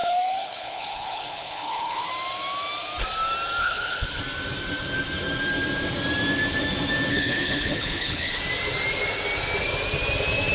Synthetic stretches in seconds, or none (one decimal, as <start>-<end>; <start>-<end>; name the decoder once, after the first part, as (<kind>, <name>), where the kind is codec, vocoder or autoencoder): 0.0-2.1 (codec, HILCodec); 3.6-4.2; 7.1-8.4